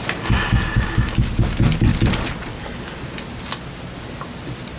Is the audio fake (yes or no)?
no